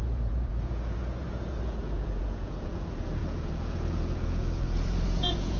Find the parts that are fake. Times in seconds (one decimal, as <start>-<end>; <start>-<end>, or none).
0.0-5.6